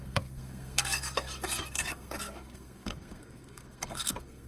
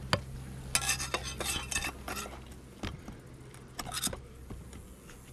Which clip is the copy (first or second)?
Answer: first